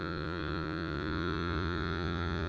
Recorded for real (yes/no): no